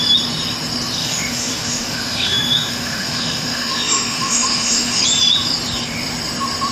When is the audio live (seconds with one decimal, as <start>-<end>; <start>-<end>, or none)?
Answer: 0.0-1.0; 5.0-6.7